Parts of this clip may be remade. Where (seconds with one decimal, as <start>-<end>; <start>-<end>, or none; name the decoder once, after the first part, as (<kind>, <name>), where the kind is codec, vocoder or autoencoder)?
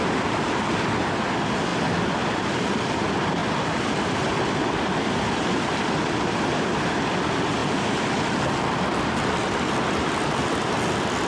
none